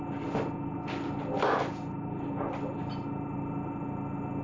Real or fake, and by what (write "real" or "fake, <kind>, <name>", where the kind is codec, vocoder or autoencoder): real